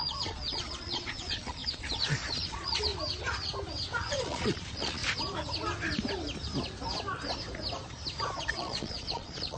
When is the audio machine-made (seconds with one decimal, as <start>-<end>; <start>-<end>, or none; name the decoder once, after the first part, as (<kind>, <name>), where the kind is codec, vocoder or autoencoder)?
0.0-2.9 (vocoder, Vocos); 4.0-5.0; 8.4-9.6